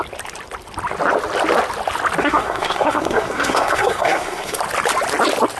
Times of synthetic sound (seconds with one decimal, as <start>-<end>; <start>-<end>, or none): 2.2-4.6